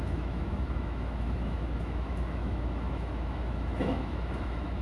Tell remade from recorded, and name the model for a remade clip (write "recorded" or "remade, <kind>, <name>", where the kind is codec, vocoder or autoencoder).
remade, autoencoder, DAC-VAE